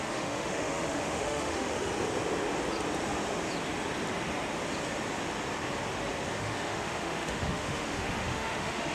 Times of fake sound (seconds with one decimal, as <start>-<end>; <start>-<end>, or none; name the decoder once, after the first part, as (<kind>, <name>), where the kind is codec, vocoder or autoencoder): 0.0-1.9 (autoencoder, DAC-VAE); 6.4-8.9